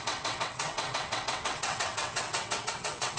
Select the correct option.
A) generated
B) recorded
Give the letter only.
A